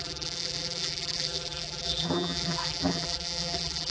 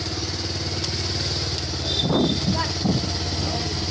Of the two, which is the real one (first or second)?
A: second